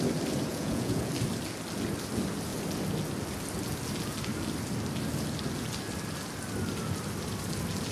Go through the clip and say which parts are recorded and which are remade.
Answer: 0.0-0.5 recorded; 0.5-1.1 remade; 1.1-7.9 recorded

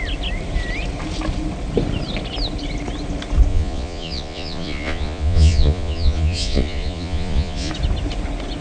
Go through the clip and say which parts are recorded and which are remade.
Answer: 0.0-3.5 recorded; 3.5-7.7 remade; 7.7-8.6 recorded

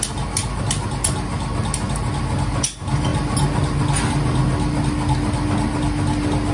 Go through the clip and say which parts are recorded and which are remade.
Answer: 0.0-6.5 recorded

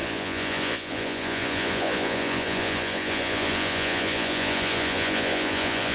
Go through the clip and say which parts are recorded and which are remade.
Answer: 0.0-5.9 remade

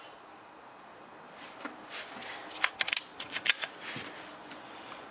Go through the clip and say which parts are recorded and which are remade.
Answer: 0.0-3.1 recorded; 3.1-3.8 remade; 3.8-4.4 recorded; 4.4-5.1 remade

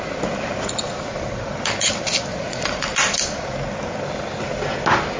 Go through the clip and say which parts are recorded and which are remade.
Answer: 0.0-2.3 recorded; 2.3-2.9 remade; 2.9-5.2 recorded